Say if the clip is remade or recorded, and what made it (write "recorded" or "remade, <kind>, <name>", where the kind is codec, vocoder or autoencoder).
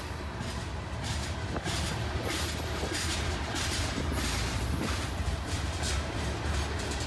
recorded